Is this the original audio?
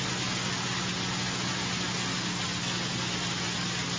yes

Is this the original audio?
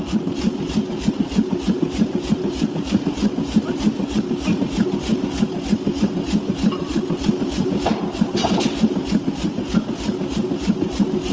yes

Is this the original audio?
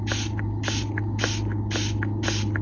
yes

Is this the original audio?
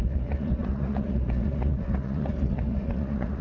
no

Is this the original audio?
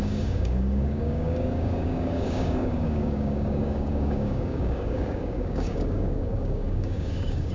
no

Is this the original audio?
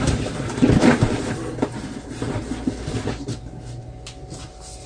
yes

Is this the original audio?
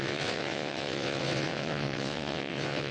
no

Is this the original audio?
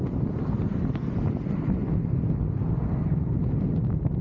yes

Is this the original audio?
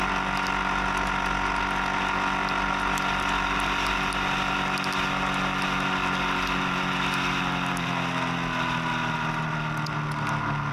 yes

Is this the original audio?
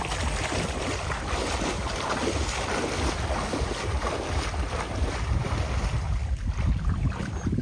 yes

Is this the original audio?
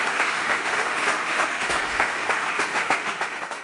no